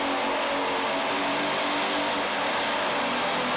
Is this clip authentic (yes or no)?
yes